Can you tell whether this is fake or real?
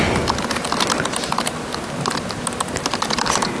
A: real